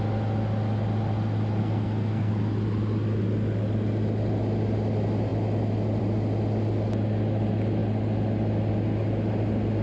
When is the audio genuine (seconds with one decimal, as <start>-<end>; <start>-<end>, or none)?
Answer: 0.0-1.6; 2.3-9.8